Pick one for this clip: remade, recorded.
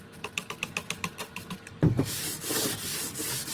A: remade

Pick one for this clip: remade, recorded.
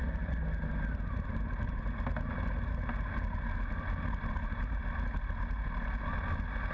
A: recorded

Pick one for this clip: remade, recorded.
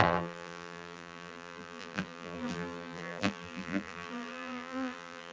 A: remade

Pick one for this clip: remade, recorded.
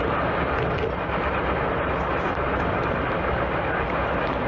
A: recorded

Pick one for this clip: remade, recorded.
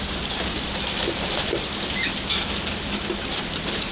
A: recorded